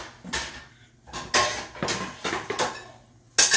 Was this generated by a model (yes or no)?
no